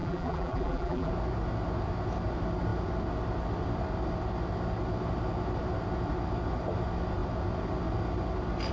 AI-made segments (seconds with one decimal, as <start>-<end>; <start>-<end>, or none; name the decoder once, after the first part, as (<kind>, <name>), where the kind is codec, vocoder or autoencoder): 0.0-1.1 (vocoder, BigVGAN v2)

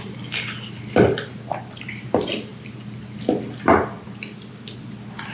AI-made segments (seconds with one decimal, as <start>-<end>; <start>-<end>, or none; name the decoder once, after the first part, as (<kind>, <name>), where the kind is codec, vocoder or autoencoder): none